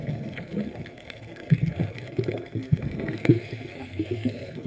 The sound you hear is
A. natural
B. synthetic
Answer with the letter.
B